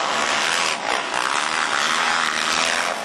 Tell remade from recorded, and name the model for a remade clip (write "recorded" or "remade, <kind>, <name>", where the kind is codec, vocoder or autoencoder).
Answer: recorded